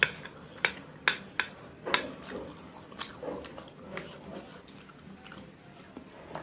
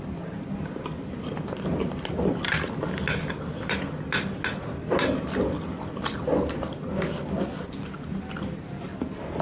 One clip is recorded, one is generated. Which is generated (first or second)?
second